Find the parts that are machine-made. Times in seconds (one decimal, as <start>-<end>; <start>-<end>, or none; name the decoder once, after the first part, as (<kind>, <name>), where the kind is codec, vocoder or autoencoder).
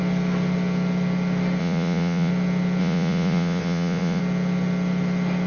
1.6-2.3 (vocoder, Vocos); 2.8-4.2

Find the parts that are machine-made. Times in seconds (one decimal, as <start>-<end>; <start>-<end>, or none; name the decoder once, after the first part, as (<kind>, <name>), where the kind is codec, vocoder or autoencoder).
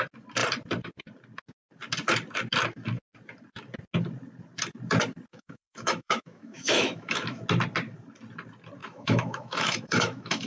5.3-7.4 (autoencoder, DAC-VAE); 8.8-10.5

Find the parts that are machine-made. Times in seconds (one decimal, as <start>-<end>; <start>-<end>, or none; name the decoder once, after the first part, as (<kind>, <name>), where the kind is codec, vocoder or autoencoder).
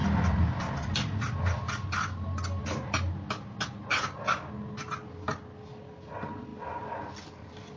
none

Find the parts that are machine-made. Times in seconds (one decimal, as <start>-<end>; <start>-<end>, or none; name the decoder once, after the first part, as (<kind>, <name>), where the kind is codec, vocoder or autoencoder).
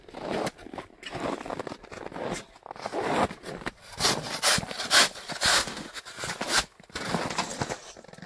5.5-6.0 (autoencoder, DAC-VAE)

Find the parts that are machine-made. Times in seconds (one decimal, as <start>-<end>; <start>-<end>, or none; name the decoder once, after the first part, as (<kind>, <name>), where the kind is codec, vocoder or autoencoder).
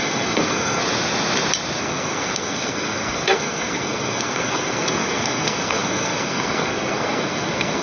0.0-0.8 (codec, SNAC); 1.8-7.8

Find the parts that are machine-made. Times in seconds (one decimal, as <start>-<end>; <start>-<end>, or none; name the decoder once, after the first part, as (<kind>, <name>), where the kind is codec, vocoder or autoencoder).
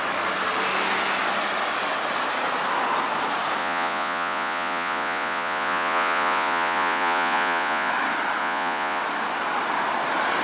3.6-7.9 (vocoder, Vocos); 8.4-9.0